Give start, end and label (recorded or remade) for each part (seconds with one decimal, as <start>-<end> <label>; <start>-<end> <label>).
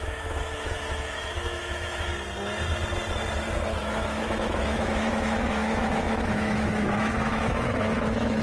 0.0-2.1 remade; 2.1-3.8 recorded; 3.8-8.4 remade